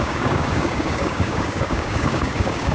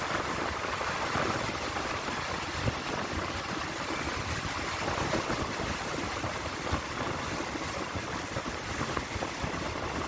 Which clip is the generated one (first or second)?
first